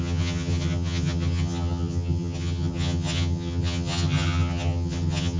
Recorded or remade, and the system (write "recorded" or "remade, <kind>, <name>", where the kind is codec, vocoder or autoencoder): remade, vocoder, HiFi-GAN